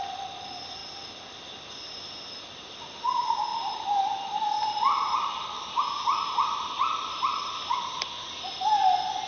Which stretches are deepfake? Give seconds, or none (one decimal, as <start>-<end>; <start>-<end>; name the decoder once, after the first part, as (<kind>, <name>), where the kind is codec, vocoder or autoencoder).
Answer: 3.5-8.0 (vocoder, BigVGAN v2)